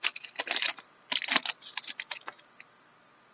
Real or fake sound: real